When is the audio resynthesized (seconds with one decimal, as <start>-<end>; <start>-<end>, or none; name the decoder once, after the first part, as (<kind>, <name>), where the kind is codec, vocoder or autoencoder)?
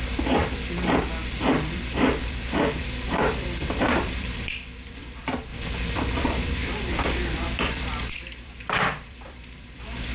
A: 0.0-10.1 (vocoder, BigVGAN v2)